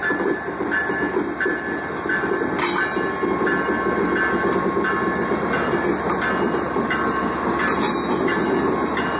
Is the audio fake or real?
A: real